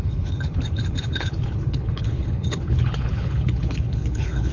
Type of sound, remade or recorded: remade